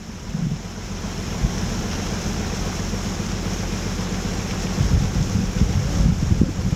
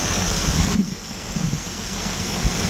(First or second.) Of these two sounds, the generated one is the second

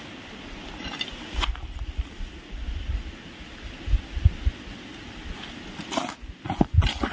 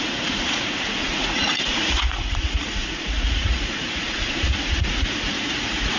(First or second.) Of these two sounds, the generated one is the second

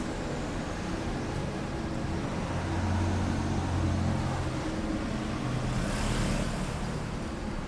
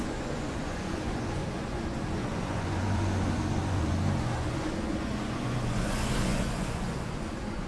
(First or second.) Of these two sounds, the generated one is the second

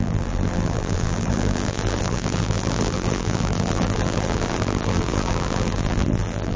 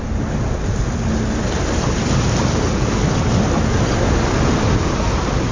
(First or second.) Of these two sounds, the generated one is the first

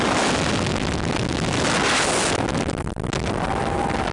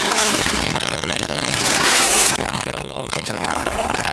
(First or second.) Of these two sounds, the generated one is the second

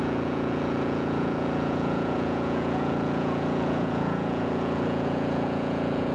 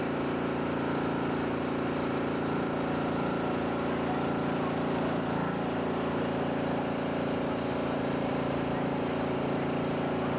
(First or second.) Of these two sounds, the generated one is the first